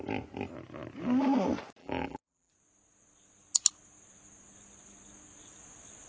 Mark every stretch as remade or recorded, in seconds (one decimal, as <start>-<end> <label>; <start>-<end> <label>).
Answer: 0.0-1.8 recorded; 1.8-2.5 remade; 2.5-6.1 recorded